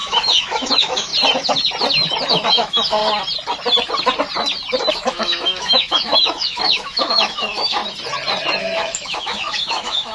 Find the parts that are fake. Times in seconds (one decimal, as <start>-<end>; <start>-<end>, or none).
0.0-1.1; 2.3-3.0; 4.9-7.8; 8.6-10.1